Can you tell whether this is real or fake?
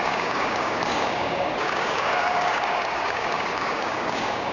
fake